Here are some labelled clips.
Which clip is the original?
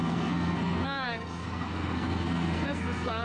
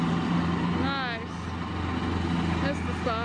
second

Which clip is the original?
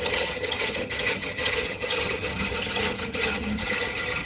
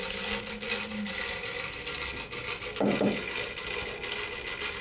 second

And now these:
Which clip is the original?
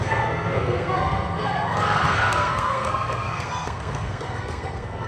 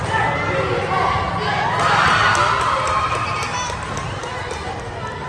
second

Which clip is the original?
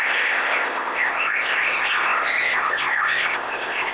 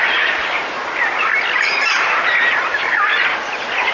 second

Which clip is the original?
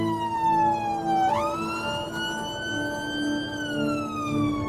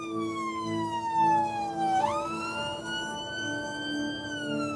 first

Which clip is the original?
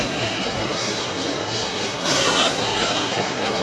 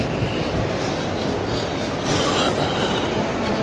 second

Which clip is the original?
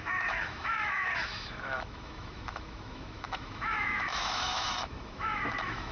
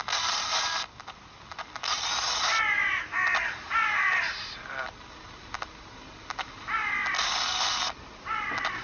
second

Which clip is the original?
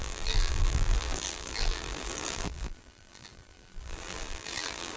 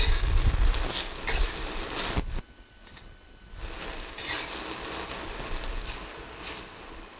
second